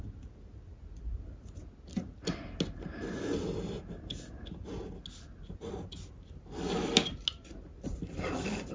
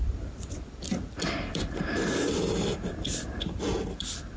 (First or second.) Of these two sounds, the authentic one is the first